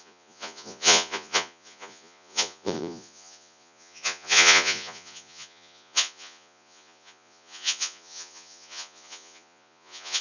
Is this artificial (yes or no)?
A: yes